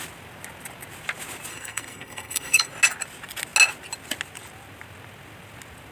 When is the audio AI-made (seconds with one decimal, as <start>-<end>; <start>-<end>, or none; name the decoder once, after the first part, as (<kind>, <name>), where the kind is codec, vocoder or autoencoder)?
1.5-2.7 (codec, SNAC)